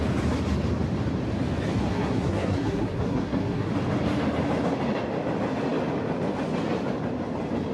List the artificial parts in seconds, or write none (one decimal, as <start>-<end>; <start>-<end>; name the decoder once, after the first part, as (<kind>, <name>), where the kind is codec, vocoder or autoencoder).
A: 1.9-3.7 (codec, SNAC)